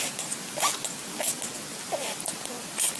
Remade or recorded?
recorded